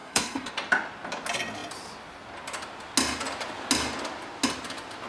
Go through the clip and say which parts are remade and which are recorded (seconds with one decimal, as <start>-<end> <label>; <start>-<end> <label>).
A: 0.0-0.5 remade; 0.5-5.1 recorded